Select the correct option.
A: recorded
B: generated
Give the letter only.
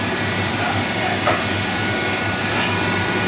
A